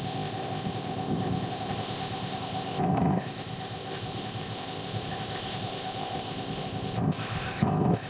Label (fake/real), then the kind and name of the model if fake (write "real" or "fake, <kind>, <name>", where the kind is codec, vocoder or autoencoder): fake, codec, ZipCodec